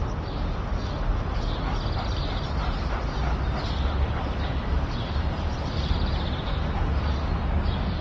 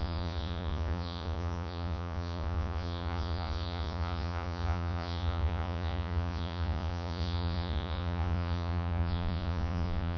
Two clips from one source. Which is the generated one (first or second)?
second